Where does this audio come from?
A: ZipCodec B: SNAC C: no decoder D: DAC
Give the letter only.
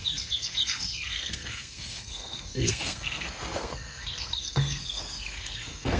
B